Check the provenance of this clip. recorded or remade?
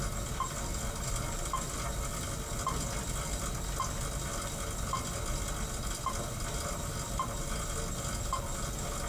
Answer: recorded